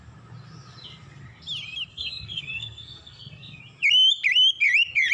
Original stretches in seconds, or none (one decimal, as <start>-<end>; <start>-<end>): 0.0-1.9; 3.6-5.1